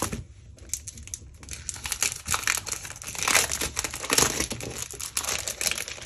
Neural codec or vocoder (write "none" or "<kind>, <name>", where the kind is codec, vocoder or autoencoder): none